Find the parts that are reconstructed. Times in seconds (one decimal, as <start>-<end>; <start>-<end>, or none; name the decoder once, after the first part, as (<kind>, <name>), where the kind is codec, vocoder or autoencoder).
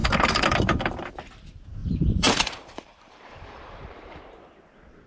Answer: 0.0-1.1 (vocoder, BigVGAN v2); 1.8-4.2